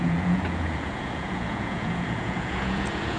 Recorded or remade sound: remade